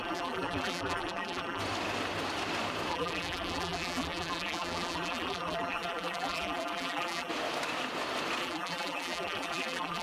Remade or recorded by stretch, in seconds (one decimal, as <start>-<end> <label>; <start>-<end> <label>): 0.0-1.6 remade; 1.6-2.9 recorded; 2.9-7.3 remade; 7.3-8.4 recorded; 8.4-10.0 remade